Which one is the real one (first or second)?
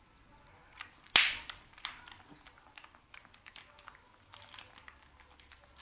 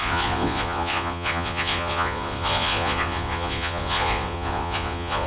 first